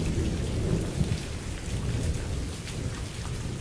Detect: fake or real real